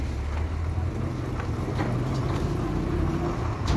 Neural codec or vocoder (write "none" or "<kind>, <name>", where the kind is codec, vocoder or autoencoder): none